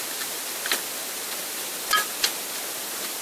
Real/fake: real